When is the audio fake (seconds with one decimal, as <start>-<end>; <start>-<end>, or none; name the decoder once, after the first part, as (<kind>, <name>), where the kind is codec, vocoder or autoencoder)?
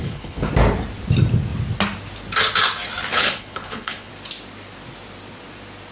0.0-0.5 (codec, HILCodec); 3.1-4.1